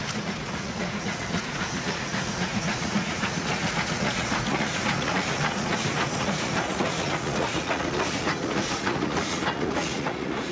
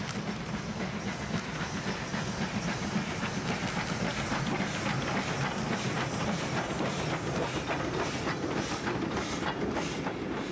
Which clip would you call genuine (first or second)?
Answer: second